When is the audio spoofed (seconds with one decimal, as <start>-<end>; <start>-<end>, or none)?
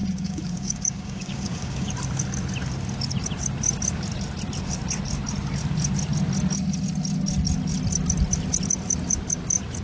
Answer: 0.0-1.9